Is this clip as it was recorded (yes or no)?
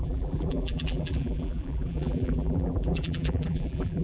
no